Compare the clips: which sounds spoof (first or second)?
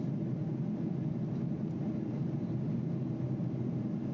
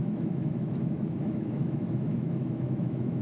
second